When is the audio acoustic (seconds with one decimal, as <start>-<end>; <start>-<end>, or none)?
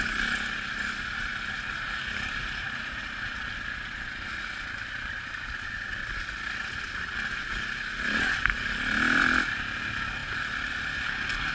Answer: 0.0-11.5